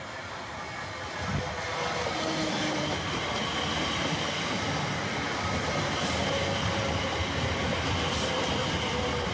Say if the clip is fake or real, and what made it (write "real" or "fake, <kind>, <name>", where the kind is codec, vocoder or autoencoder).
real